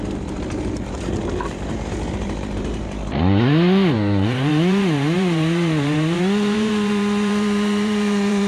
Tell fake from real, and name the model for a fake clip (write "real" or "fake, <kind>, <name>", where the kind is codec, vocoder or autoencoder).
fake, vocoder, BigVGAN v2